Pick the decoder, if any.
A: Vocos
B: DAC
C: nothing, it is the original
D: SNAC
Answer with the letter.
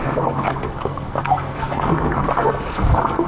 D